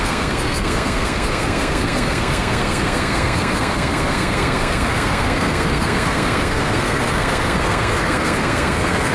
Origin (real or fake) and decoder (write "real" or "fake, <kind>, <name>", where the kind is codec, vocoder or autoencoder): fake, codec, SNAC